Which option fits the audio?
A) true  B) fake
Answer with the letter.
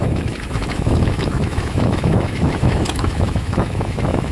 B